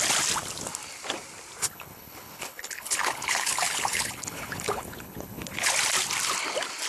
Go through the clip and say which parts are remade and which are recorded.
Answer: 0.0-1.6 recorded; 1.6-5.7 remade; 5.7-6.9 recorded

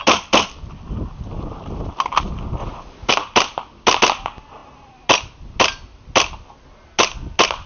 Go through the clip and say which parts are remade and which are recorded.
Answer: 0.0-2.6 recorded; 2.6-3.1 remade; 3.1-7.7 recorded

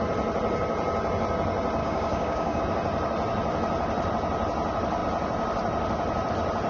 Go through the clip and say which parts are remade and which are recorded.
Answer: 0.0-1.8 recorded; 1.8-2.6 remade; 2.6-6.7 recorded